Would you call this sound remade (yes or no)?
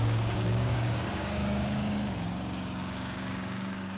yes